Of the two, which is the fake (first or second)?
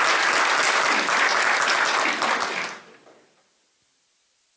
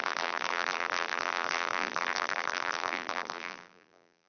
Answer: second